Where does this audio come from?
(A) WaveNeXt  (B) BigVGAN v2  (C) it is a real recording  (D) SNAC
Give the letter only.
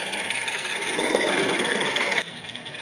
D